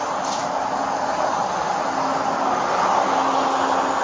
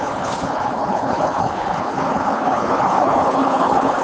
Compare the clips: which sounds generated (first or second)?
second